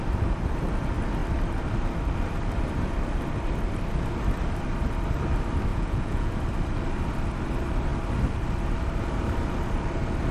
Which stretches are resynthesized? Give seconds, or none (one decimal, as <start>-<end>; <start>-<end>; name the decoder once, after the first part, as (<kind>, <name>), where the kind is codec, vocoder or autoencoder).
5.7-6.3 (vocoder, Vocos)